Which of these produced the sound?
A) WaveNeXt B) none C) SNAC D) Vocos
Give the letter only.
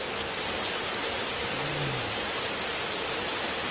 B